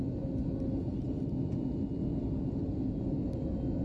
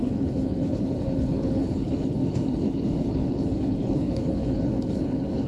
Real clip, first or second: first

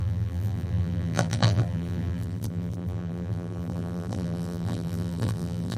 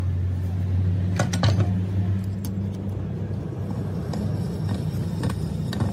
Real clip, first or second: second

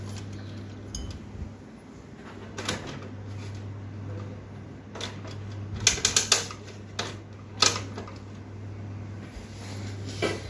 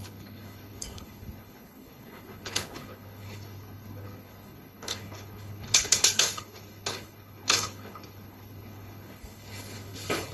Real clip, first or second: first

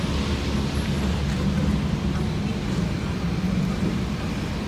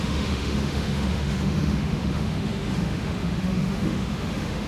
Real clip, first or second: first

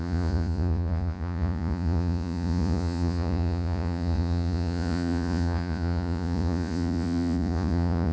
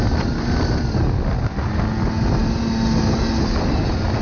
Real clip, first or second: second